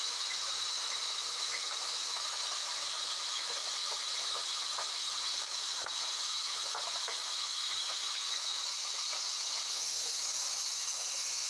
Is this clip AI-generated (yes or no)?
yes